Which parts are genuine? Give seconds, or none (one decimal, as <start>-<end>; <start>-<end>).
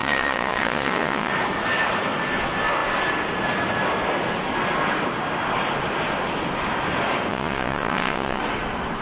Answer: 1.3-7.3; 8.4-9.0